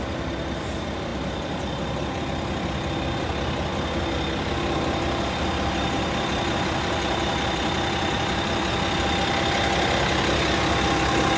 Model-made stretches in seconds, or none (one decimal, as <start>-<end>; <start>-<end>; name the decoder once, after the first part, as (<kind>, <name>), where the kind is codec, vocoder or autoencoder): none